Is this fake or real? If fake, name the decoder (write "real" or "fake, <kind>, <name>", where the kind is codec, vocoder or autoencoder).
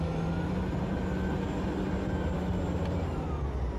real